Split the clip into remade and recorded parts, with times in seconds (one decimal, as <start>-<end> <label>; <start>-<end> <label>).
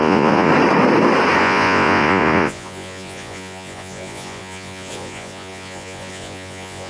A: 0.0-0.5 remade; 0.5-1.4 recorded; 1.4-6.9 remade